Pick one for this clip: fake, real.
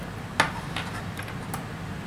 real